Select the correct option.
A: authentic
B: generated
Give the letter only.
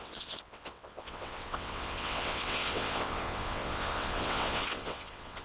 B